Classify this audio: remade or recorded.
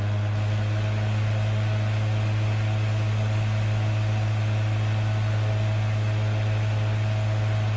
recorded